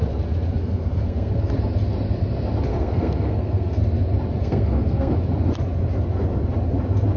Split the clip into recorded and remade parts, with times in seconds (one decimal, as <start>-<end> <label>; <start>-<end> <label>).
0.0-0.6 recorded; 0.6-1.5 remade; 1.5-2.7 recorded; 2.7-3.8 remade; 3.8-4.4 recorded; 4.4-5.1 remade; 5.1-7.2 recorded